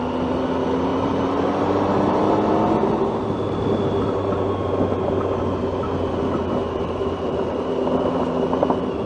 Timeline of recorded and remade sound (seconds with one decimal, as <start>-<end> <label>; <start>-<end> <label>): 0.0-0.9 recorded; 0.9-2.5 remade; 2.5-6.6 recorded; 6.6-7.7 remade; 7.7-9.1 recorded